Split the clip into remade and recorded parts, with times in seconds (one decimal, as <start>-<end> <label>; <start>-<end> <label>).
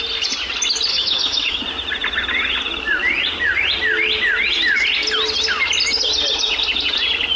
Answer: 0.0-0.9 recorded; 0.9-1.6 remade; 1.6-7.4 recorded